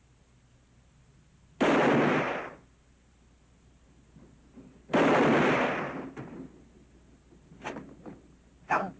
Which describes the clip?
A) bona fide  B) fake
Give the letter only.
A